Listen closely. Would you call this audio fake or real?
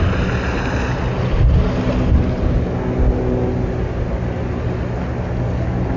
real